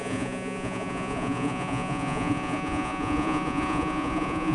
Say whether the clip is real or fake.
fake